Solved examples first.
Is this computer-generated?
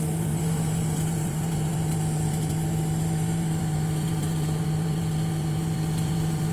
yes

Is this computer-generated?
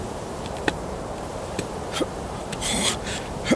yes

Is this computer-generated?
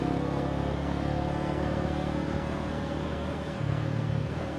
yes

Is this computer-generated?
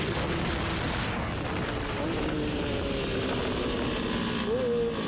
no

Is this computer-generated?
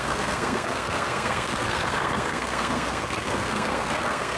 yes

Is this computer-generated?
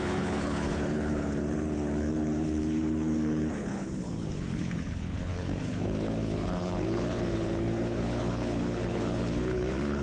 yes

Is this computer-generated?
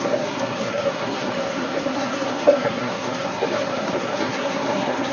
yes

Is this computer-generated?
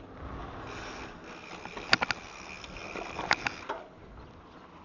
no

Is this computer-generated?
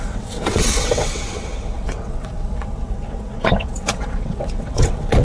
yes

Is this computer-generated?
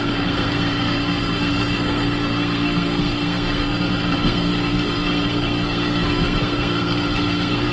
yes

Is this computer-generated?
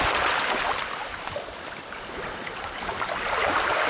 no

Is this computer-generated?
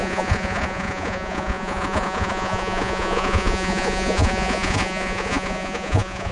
yes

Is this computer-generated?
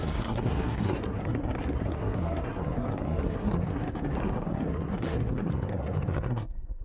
yes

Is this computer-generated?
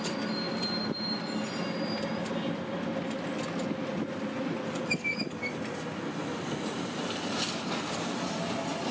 no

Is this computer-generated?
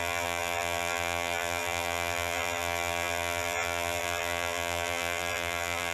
yes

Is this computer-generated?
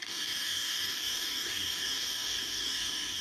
yes